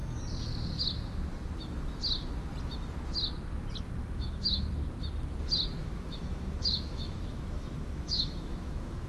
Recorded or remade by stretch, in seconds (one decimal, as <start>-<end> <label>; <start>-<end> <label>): 0.0-4.0 recorded; 4.0-4.7 remade; 4.7-5.8 recorded; 5.8-9.1 remade